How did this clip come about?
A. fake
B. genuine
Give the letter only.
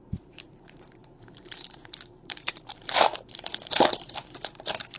A